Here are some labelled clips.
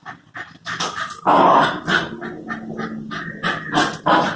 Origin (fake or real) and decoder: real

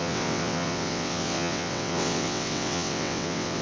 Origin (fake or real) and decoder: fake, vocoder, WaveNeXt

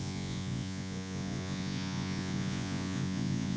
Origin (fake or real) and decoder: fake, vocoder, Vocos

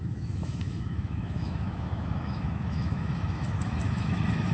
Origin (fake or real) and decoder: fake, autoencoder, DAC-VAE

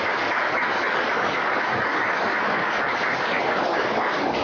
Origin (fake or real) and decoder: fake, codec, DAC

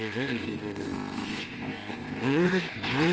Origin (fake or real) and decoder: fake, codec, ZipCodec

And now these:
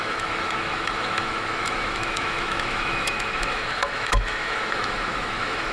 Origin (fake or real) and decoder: fake, autoencoder, DAC-VAE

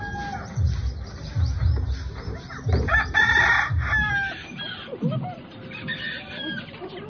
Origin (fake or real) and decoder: real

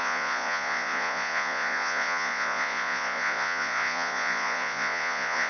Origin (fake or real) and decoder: fake, vocoder, Vocos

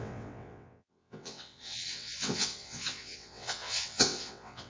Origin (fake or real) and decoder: fake, vocoder, WaveNeXt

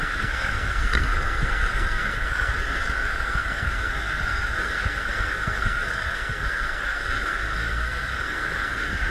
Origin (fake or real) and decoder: fake, codec, SNAC